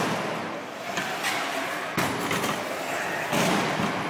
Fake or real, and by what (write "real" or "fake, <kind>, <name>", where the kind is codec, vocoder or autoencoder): real